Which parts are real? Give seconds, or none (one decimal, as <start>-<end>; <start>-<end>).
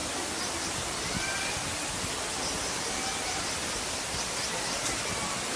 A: 0.0-5.6